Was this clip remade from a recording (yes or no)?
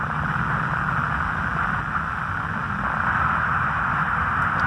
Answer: no